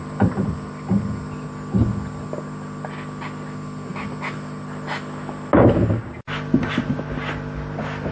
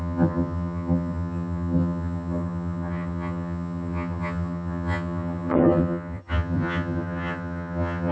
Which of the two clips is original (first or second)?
first